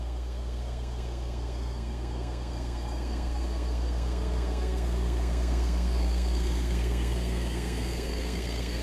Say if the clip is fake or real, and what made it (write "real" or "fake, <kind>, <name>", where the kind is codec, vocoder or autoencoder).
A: fake, codec, SNAC